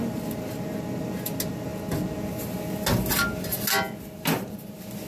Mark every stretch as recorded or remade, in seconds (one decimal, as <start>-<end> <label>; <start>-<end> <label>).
0.0-5.1 recorded